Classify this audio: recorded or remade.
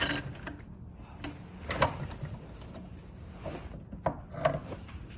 recorded